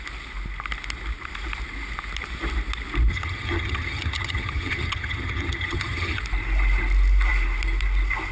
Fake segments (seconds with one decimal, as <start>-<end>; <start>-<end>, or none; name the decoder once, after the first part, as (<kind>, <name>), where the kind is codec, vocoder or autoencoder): 3.1-6.2 (vocoder, HiFi-GAN)